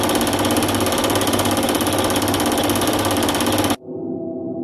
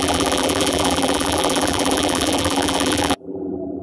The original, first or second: first